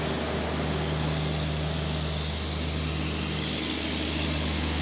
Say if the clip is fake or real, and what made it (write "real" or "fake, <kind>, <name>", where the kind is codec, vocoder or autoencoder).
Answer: real